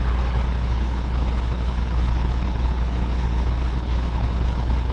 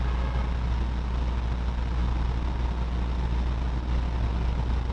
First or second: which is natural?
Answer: second